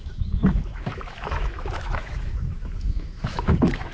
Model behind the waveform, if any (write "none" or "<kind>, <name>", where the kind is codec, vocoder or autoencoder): autoencoder, DAC-VAE